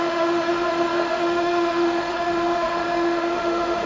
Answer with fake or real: fake